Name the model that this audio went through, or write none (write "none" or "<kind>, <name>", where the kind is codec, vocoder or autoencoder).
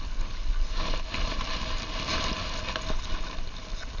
none